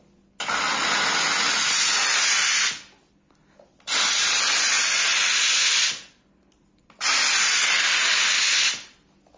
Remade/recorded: recorded